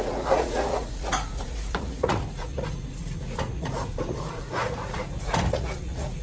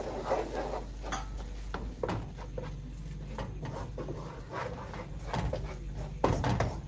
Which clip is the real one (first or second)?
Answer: second